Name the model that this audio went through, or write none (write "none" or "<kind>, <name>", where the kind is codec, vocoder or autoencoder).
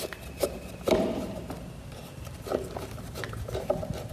none